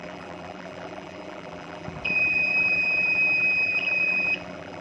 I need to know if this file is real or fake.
fake